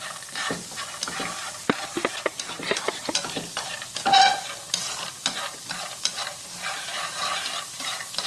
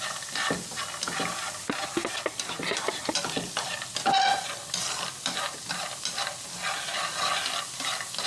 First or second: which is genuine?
second